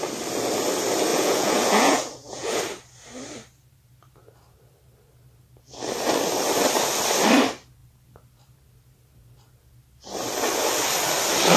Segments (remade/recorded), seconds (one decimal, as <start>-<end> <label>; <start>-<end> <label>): 0.0-1.1 recorded; 1.1-2.6 remade; 2.6-11.6 recorded